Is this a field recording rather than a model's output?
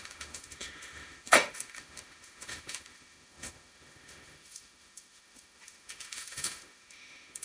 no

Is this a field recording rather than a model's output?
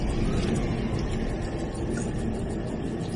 yes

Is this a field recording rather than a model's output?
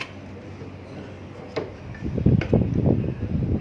yes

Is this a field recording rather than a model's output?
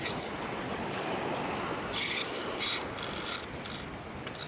yes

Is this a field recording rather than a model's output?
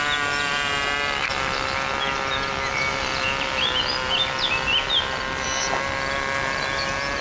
yes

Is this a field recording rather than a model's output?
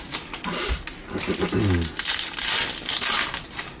yes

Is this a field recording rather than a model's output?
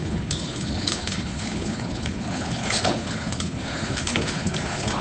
no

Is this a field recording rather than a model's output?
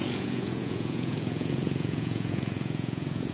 no